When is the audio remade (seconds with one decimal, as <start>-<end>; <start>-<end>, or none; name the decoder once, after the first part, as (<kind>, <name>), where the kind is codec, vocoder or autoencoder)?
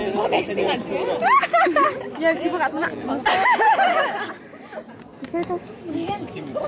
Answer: 5.1-6.7 (autoencoder, DAC-VAE)